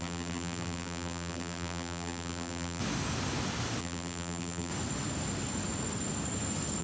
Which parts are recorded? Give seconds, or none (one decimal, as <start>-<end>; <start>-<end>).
2.8-3.8; 4.7-6.8